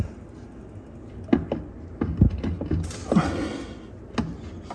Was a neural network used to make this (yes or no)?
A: no